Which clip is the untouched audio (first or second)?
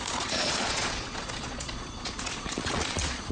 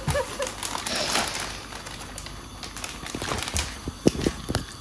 second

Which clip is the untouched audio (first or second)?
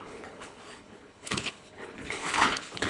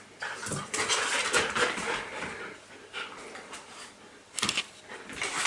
second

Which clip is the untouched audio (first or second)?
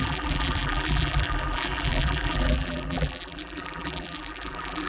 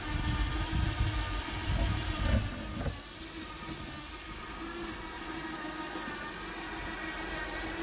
second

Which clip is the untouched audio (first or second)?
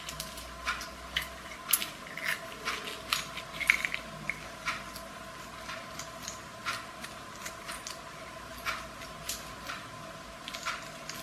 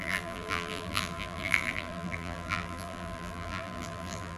first